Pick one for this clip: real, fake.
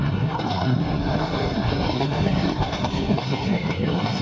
fake